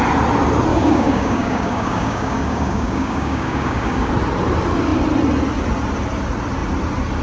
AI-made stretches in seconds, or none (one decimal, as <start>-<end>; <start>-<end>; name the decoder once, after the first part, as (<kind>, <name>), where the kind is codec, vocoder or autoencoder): 0.7-4.1 (codec, DAC)